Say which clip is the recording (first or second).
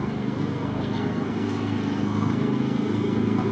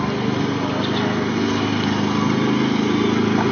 second